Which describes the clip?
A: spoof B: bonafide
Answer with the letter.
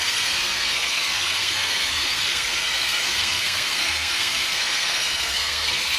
A